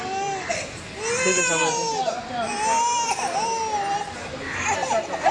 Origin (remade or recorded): recorded